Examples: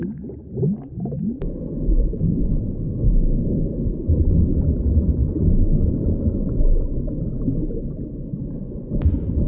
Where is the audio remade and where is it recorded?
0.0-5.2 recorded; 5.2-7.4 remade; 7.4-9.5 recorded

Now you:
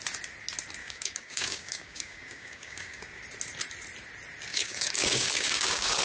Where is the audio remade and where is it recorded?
0.0-0.8 recorded; 0.8-3.2 remade; 3.2-4.5 recorded; 4.5-6.0 remade

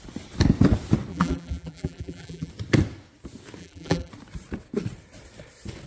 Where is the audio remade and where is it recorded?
0.0-1.1 recorded; 1.1-2.5 remade; 2.5-3.6 recorded; 3.6-4.1 remade; 4.1-5.9 recorded

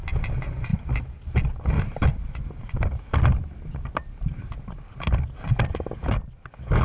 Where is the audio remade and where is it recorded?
0.0-6.8 recorded

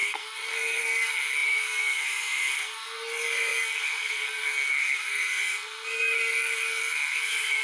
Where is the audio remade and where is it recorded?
0.0-7.6 remade

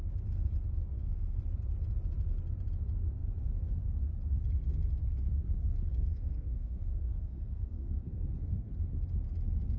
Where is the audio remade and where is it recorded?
0.0-0.9 recorded; 0.9-1.4 remade; 1.4-5.9 recorded; 5.9-8.7 remade; 8.7-9.8 recorded